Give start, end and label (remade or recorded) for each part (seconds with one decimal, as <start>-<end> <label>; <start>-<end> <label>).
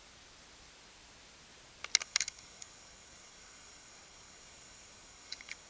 0.0-2.0 recorded; 2.0-5.7 remade